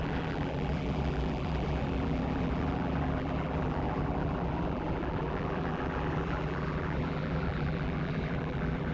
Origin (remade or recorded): remade